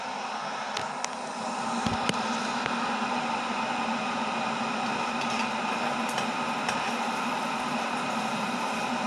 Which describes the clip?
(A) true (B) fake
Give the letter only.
A